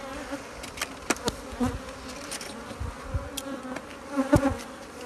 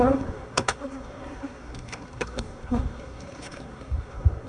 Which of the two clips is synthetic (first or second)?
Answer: second